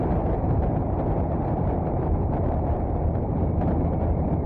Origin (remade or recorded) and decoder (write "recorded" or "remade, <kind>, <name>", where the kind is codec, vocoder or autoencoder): remade, vocoder, BigVGAN v2